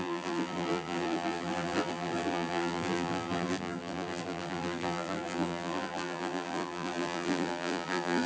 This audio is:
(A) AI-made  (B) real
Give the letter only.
A